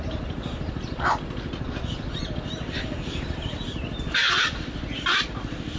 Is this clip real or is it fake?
real